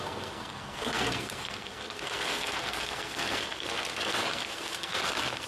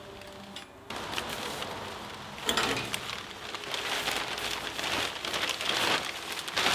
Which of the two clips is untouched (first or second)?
second